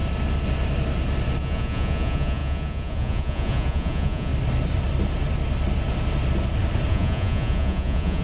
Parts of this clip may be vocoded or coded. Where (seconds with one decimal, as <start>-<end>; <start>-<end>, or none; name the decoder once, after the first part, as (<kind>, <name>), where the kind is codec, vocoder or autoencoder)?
1.4-4.3 (vocoder, Vocos); 6.9-8.2